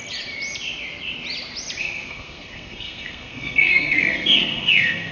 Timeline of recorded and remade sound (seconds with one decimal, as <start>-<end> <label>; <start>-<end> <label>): 0.0-1.8 recorded; 1.8-5.1 remade